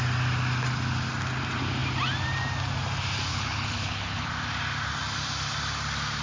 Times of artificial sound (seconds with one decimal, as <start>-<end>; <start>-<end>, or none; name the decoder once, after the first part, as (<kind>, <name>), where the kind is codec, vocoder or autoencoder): 3.3-4.3 (codec, HILCodec)